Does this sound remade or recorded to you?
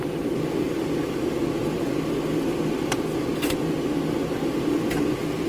recorded